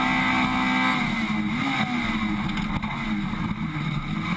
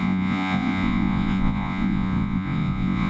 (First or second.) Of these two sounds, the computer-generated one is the second